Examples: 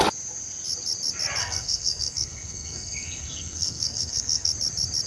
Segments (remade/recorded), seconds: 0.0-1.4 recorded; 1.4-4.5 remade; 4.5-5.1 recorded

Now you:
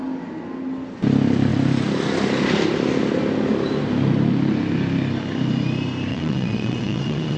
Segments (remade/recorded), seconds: 0.0-6.1 recorded; 6.1-7.4 remade

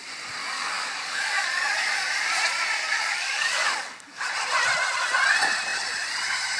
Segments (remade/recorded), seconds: 0.0-0.4 recorded; 0.4-2.3 remade; 2.3-2.8 recorded; 2.8-4.3 remade; 4.3-6.6 recorded

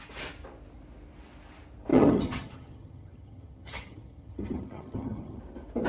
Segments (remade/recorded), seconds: 0.0-1.9 recorded; 1.9-5.4 remade; 5.4-5.9 recorded

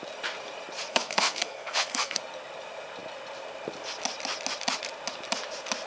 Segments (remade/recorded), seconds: 0.0-0.9 recorded; 0.9-2.2 remade; 2.2-5.9 recorded

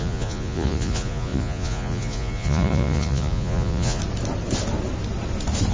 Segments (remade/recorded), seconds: 0.0-4.0 remade; 4.0-5.7 recorded

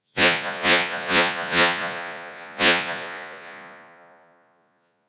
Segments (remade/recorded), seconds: 0.0-5.1 remade